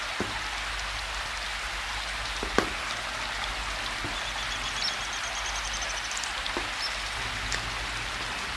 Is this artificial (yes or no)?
no